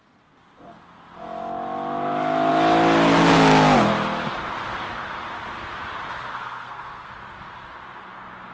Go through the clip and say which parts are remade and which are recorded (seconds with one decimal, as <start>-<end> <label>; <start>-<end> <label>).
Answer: 0.0-6.3 recorded; 6.3-7.1 remade; 7.1-8.5 recorded